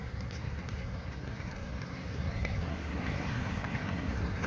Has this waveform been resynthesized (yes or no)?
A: yes